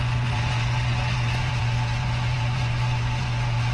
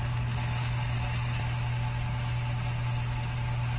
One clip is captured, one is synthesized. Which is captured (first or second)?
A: second